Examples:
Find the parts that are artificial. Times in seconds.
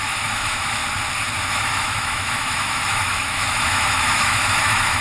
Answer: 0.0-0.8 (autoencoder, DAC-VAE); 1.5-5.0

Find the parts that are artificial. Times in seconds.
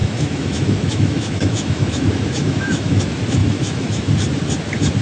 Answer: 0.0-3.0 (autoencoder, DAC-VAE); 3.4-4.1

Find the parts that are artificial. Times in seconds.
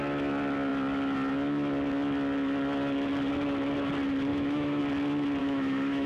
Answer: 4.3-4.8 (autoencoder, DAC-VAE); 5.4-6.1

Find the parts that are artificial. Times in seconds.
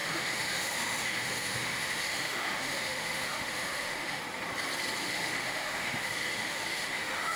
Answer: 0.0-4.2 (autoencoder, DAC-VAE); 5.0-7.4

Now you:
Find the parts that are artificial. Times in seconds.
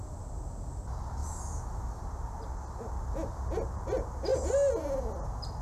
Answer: 1.2-2.0 (autoencoder, DAC-VAE)